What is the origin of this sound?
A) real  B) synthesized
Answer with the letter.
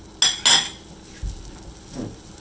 A